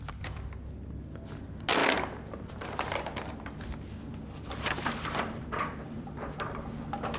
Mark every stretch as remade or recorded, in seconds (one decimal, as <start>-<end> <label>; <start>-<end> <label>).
0.0-4.1 recorded; 4.1-6.2 remade; 6.2-7.2 recorded